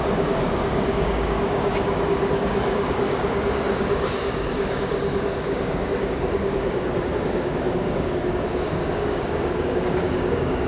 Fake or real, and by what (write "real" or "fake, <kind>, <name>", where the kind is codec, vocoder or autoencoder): fake, codec, DAC